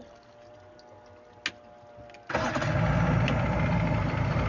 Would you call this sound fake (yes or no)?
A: no